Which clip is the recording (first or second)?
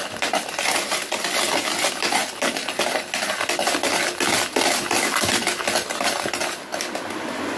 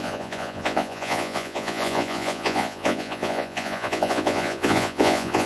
first